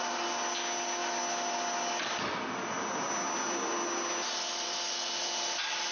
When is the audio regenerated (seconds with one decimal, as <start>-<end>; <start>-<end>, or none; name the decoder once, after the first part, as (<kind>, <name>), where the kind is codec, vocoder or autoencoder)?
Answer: none